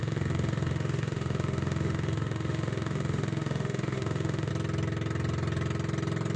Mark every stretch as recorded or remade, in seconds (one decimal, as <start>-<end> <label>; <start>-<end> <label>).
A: 0.0-4.5 remade; 4.5-6.4 recorded